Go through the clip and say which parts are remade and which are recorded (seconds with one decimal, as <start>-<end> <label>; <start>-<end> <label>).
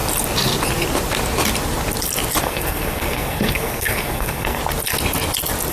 0.0-2.4 recorded; 2.4-4.6 remade; 4.6-5.7 recorded